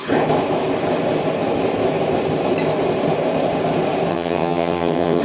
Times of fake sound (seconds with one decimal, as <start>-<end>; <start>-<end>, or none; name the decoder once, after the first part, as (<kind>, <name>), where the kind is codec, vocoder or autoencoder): 4.1-5.2 (vocoder, HiFi-GAN)